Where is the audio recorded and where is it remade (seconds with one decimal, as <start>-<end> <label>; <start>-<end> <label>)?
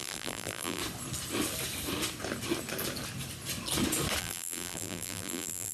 0.0-0.8 remade; 0.8-4.2 recorded; 4.2-5.7 remade